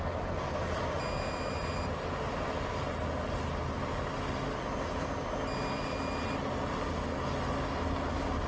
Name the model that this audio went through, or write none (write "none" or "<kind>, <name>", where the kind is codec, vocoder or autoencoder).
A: none